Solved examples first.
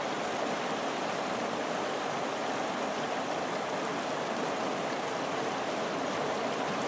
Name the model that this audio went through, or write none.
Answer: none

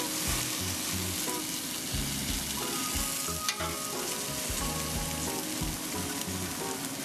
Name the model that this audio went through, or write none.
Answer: none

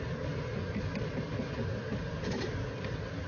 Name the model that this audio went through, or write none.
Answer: none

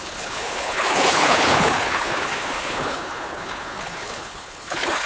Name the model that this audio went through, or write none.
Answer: codec, HILCodec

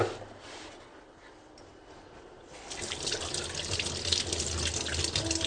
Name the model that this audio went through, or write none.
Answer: none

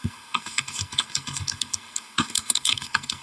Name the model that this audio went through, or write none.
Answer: codec, SNAC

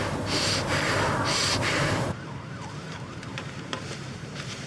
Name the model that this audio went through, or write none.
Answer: vocoder, BigVGAN v2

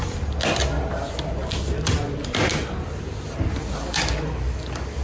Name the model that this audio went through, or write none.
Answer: none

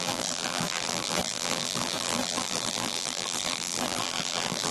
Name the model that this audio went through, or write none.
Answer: vocoder, BigVGAN v2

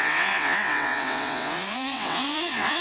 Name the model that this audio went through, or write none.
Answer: vocoder, WaveNeXt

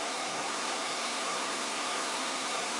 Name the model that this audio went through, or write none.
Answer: codec, SNAC